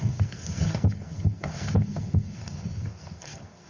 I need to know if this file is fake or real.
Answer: fake